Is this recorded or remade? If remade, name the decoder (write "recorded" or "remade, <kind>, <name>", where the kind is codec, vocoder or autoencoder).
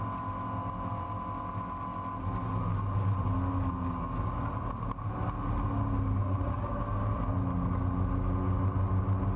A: recorded